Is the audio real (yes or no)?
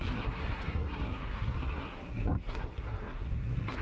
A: no